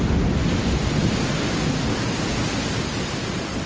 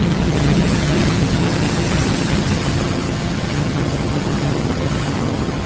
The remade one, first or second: second